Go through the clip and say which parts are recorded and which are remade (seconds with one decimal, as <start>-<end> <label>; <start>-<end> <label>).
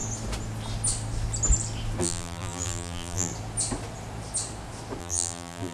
0.0-2.0 recorded; 2.0-3.3 remade; 3.3-5.0 recorded; 5.0-5.7 remade